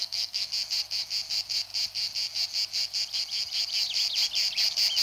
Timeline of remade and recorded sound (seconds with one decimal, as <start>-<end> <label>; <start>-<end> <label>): 0.0-0.5 remade; 0.5-5.0 recorded